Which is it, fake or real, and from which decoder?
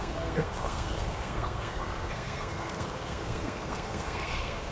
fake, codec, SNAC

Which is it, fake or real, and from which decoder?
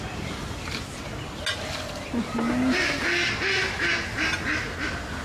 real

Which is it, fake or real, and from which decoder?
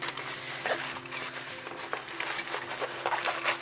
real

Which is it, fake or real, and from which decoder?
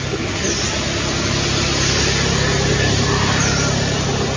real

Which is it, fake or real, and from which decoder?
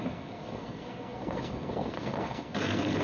fake, codec, SNAC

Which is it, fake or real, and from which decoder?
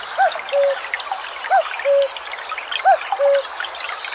real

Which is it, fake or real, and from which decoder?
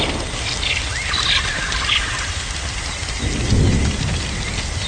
real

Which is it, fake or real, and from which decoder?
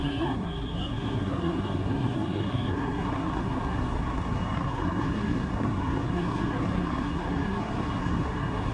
fake, codec, SNAC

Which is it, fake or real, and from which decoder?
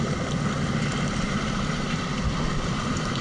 fake, vocoder, BigVGAN v2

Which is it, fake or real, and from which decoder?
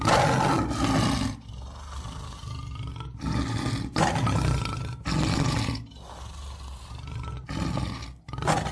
real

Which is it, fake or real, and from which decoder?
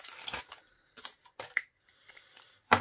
fake, vocoder, BigVGAN v2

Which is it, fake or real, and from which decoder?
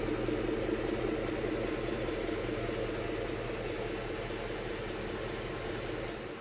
real